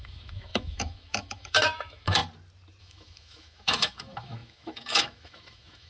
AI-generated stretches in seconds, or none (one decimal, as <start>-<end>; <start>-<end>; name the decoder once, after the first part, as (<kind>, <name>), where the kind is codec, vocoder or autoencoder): 0.0-2.2 (autoencoder, DAC-VAE); 2.8-5.9